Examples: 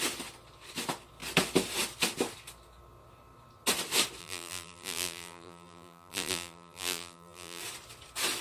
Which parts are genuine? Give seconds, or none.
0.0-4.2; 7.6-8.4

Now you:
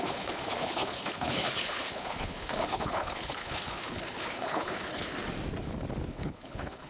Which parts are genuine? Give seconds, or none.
5.1-6.1

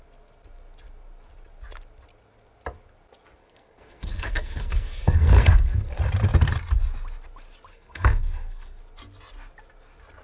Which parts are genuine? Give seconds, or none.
0.0-3.4; 6.0-7.7; 8.8-10.2

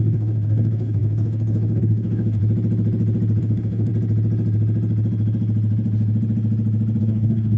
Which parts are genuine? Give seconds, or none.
2.4-3.4; 3.9-7.0

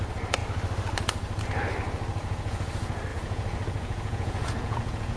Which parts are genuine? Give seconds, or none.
0.0-2.2; 2.7-3.1

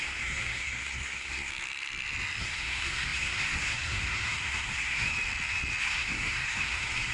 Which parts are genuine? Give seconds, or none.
1.5-2.4; 5.1-5.8

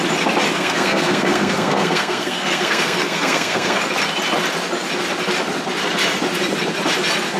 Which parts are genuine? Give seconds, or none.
0.0-0.5; 3.8-7.4